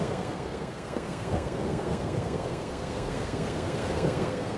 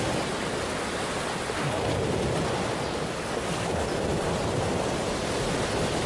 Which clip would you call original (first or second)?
second